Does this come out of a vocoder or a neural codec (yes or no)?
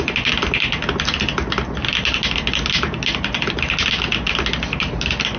no